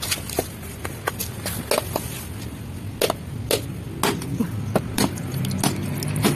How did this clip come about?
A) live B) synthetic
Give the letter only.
A